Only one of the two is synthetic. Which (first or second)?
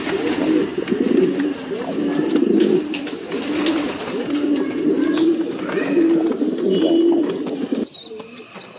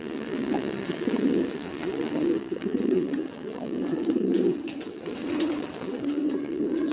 second